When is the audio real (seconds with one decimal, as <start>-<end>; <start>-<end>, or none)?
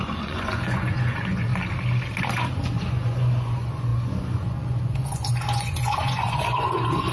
1.5-2.7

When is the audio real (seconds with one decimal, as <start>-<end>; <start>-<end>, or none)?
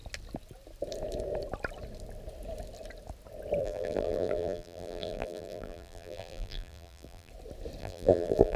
0.0-3.6; 7.3-7.8